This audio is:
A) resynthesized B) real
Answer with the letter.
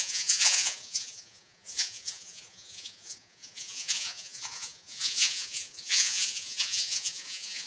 A